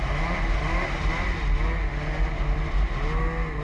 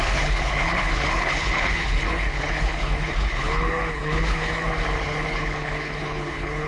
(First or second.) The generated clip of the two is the second